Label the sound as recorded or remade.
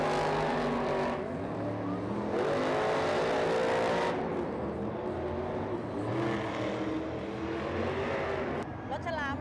recorded